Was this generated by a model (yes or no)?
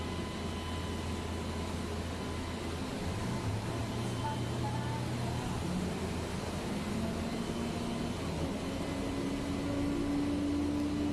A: no